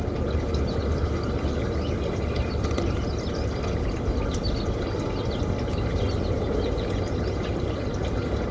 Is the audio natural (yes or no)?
yes